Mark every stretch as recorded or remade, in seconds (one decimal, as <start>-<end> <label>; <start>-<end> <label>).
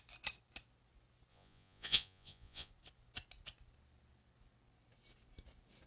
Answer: 0.0-1.3 recorded; 1.3-2.7 remade; 2.7-5.9 recorded